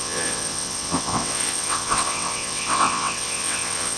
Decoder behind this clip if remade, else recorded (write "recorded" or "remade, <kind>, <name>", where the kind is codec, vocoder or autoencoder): remade, vocoder, WaveNeXt